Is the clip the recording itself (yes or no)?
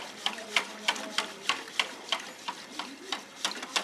yes